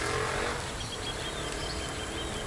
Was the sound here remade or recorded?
recorded